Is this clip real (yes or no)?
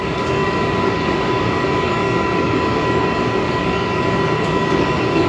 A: no